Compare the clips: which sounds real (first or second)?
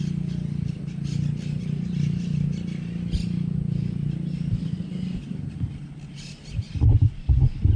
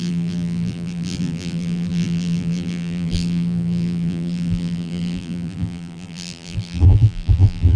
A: first